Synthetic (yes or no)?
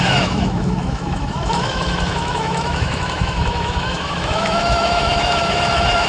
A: yes